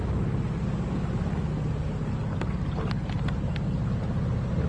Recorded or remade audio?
recorded